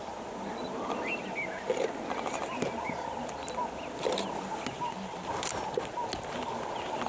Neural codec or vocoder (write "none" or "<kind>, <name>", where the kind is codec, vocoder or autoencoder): none